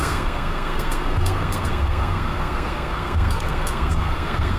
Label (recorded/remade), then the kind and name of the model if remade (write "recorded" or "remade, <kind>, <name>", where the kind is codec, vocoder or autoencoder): remade, codec, SNAC